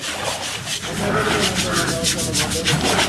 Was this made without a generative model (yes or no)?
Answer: yes